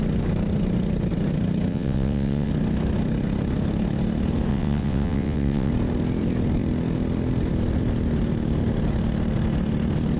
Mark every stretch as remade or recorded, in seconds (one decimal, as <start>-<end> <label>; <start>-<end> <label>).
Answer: 0.0-1.7 recorded; 1.7-2.5 remade; 2.5-4.5 recorded; 4.5-5.7 remade; 5.7-10.2 recorded

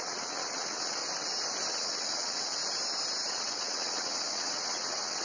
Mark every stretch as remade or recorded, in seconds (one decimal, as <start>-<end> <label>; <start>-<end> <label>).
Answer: 0.0-1.0 remade; 1.0-1.7 recorded; 1.7-2.6 remade; 2.6-3.3 recorded; 3.3-5.2 remade

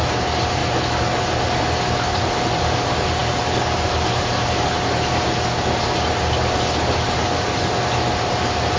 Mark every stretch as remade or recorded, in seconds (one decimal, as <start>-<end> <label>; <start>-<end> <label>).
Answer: 0.0-8.8 recorded

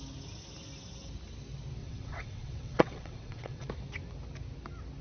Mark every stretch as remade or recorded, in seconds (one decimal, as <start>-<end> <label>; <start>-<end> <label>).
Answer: 0.0-1.8 recorded; 1.8-3.7 remade; 3.7-5.0 recorded

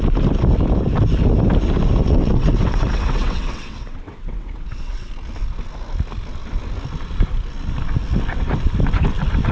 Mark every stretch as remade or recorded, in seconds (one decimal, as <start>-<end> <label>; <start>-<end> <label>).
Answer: 0.0-2.0 recorded; 2.0-5.1 remade; 5.1-9.5 recorded